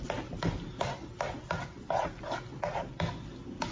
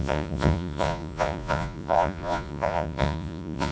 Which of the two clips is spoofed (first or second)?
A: second